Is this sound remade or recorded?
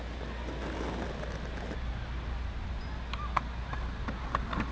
recorded